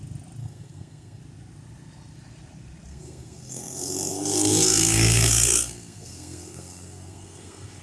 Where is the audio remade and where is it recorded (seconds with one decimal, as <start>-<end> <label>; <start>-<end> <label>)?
0.0-0.4 recorded; 0.4-1.2 remade; 1.2-2.9 recorded; 2.9-7.8 remade